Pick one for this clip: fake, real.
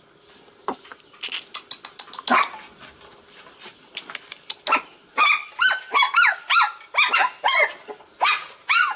real